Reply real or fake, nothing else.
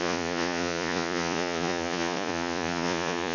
fake